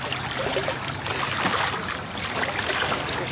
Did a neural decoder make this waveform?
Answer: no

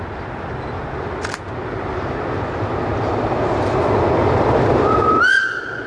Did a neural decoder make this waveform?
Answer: no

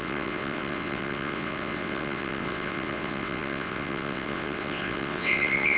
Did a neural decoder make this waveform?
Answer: yes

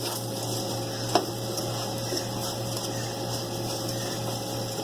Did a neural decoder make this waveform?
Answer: no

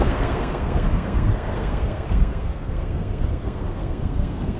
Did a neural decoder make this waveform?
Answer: yes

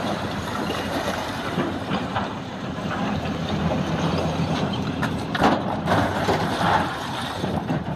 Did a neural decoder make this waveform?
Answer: yes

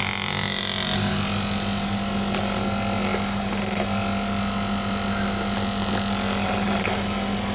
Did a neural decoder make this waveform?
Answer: no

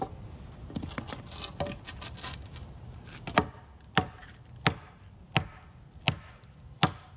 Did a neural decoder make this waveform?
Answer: no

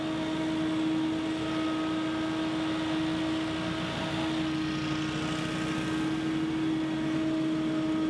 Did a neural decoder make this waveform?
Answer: no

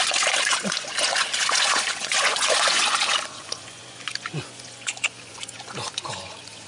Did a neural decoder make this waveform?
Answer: yes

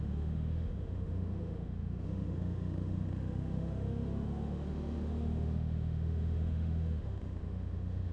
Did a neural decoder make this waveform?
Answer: yes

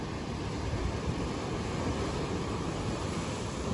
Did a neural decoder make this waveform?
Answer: yes